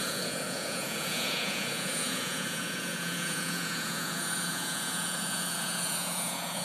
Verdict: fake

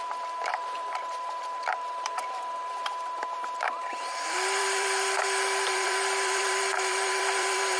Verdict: fake